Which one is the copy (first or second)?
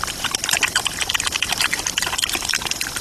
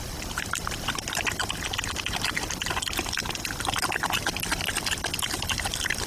first